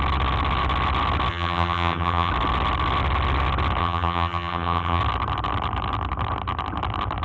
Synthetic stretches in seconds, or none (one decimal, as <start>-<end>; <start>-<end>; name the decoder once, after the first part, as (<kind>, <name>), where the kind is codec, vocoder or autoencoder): 1.3-2.3 (vocoder, HiFi-GAN); 3.8-5.0